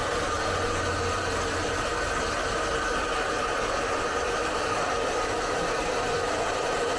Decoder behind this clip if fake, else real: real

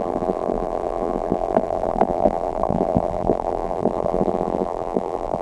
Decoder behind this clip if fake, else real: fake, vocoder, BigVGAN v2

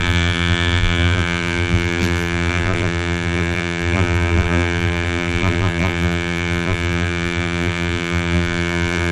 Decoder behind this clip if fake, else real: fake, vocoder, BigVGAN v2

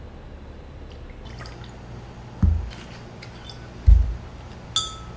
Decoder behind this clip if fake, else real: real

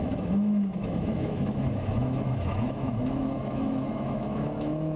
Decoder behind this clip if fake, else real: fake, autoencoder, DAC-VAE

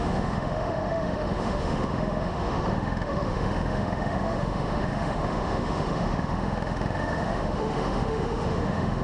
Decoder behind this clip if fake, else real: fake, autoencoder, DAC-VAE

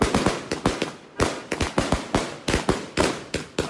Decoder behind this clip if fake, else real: real